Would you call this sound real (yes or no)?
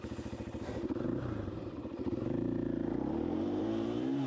no